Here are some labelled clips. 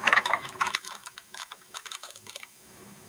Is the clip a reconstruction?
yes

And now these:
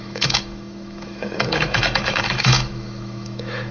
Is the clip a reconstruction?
yes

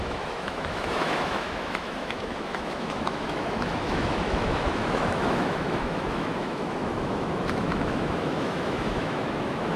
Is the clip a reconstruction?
yes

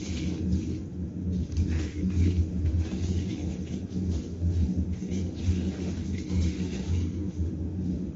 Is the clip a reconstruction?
yes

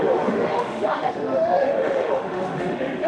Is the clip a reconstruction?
yes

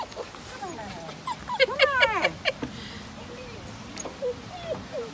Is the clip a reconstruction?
no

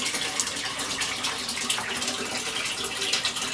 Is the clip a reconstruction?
no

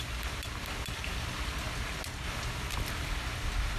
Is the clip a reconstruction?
no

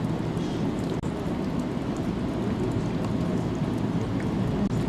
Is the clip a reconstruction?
no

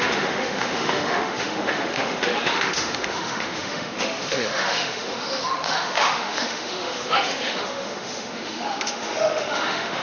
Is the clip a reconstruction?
yes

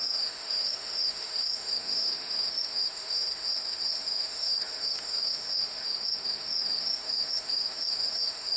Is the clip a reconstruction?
yes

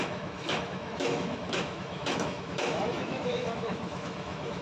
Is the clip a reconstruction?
yes